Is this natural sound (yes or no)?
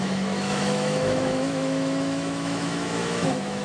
no